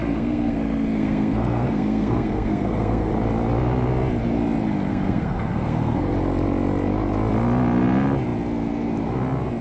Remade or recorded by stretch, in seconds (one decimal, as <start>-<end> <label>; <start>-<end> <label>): 0.0-3.1 remade; 3.1-4.9 recorded; 4.9-6.1 remade; 6.1-9.6 recorded